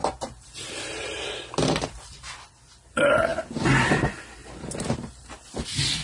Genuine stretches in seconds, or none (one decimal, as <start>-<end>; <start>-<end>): 2.5-4.4; 5.4-6.0